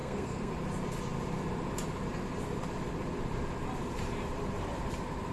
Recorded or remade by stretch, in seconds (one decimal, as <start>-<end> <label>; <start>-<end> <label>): 0.0-0.5 remade; 0.5-5.3 recorded